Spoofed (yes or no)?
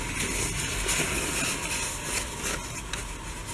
no